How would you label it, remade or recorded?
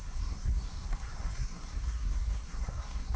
remade